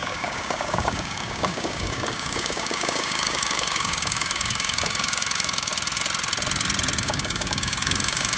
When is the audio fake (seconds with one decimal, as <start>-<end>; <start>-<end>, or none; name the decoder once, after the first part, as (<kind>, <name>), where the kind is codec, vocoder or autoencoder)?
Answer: 0.0-5.7 (codec, DAC); 7.0-8.4